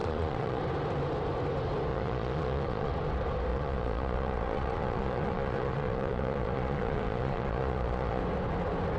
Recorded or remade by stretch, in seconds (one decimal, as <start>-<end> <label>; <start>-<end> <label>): 0.0-0.6 remade; 0.6-1.9 recorded; 1.9-2.9 remade; 2.9-3.5 recorded; 3.5-8.2 remade; 8.2-9.0 recorded